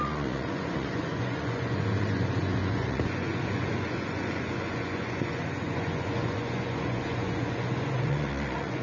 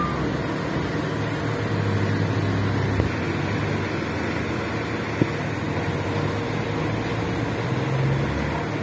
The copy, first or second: first